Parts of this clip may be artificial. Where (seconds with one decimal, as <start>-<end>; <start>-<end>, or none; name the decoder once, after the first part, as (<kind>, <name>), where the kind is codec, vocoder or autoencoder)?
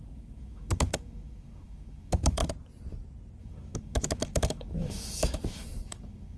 0.0-2.4 (autoencoder, DAC-VAE); 3.4-6.4